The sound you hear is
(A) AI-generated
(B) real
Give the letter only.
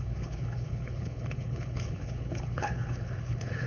A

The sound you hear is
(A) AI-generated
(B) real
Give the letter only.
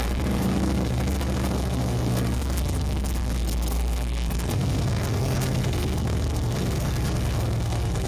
A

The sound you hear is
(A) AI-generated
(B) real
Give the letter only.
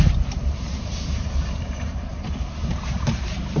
A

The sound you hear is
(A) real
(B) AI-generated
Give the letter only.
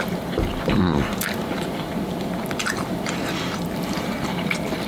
B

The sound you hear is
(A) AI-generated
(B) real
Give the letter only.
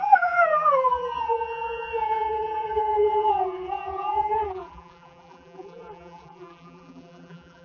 A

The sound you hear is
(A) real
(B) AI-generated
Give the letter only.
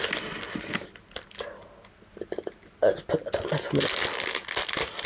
A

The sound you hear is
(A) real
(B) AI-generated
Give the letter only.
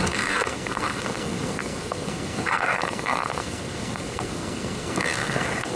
B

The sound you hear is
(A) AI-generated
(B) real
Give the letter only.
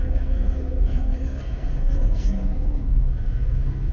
A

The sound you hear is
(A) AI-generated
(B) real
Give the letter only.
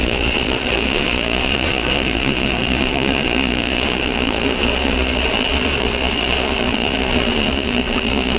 A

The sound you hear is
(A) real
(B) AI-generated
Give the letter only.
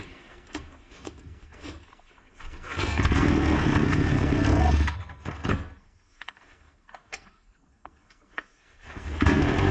B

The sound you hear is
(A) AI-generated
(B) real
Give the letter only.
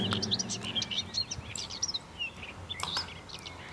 B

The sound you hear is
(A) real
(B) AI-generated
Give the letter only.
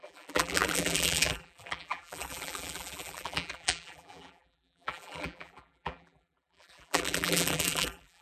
B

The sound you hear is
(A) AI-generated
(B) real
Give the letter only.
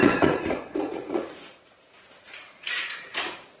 A